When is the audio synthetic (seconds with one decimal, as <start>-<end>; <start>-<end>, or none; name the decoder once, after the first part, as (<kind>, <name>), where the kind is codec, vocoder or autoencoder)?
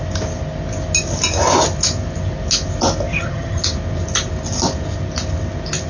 3.1-3.6 (vocoder, HiFi-GAN)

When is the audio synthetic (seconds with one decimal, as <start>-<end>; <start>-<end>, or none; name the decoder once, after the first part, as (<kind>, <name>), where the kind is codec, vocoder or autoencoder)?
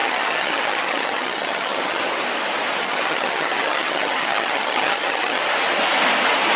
0.0-2.0 (vocoder, HiFi-GAN); 2.8-5.4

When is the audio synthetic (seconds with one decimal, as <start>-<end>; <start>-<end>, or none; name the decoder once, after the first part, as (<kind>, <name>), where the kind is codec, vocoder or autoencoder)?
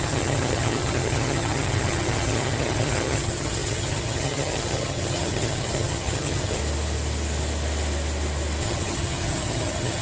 0.0-6.6 (vocoder, HiFi-GAN); 8.6-10.0